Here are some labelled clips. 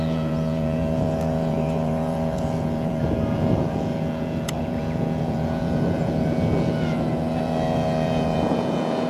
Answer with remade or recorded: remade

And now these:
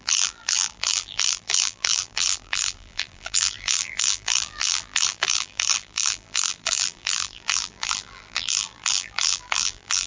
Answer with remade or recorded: remade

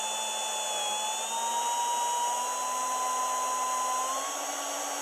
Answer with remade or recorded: recorded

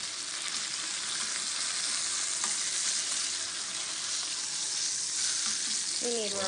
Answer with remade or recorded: recorded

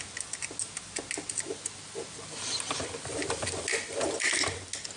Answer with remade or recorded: recorded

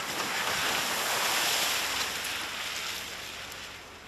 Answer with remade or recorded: recorded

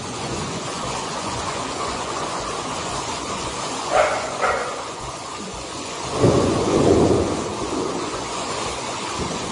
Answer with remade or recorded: remade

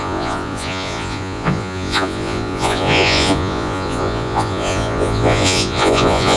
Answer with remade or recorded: remade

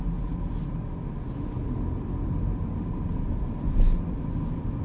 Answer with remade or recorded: recorded